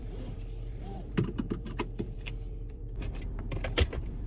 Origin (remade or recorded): remade